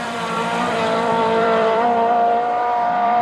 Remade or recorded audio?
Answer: remade